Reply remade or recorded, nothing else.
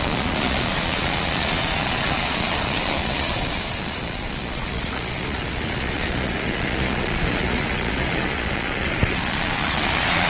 remade